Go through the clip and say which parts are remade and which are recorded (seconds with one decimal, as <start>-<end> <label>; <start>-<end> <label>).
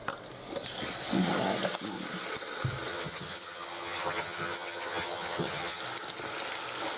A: 0.0-2.9 recorded; 2.9-5.8 remade; 5.8-7.0 recorded